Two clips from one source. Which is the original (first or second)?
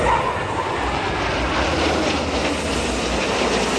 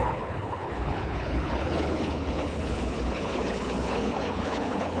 first